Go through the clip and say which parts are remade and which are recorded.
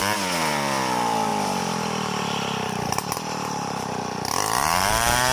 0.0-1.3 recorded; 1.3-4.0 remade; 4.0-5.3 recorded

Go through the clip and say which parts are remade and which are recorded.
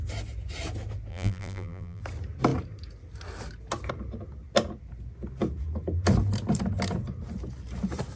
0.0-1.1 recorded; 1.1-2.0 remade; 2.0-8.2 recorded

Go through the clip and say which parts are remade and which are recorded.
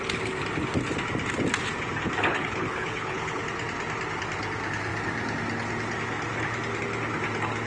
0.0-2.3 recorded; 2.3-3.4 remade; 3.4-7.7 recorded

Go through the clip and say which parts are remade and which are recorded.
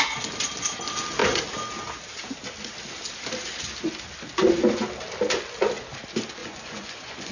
0.0-6.4 recorded; 6.4-7.3 remade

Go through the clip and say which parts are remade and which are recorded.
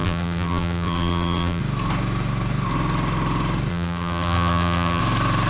0.0-1.6 remade; 1.6-3.7 recorded; 3.7-5.0 remade; 5.0-5.5 recorded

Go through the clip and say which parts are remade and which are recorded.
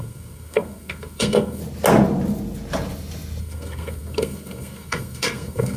0.0-1.6 remade; 1.6-3.4 recorded; 3.4-5.8 remade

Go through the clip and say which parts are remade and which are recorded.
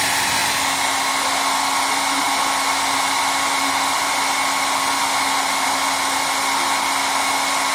0.0-7.7 recorded